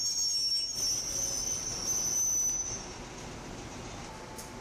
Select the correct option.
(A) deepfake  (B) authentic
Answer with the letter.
B